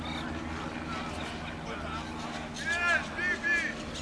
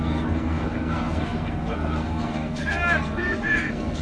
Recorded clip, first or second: first